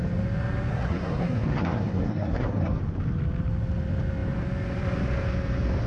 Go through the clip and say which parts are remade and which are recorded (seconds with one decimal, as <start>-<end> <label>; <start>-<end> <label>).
0.0-0.7 recorded; 0.7-2.8 remade; 2.8-5.9 recorded